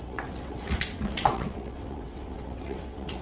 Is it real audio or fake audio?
fake